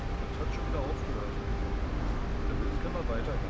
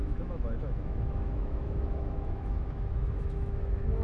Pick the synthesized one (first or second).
second